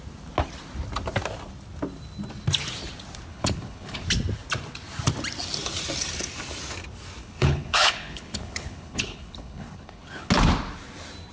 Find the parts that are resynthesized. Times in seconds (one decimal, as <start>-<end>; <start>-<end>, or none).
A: 3.3-4.0; 7.2-10.3